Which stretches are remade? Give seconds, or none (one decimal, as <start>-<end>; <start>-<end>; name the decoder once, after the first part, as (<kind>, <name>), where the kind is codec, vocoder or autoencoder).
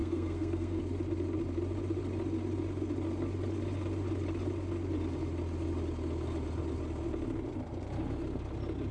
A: 0.0-0.8 (codec, SNAC)